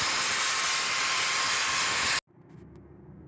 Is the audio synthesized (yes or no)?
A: no